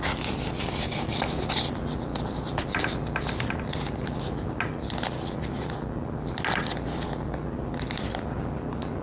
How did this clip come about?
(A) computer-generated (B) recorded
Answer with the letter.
B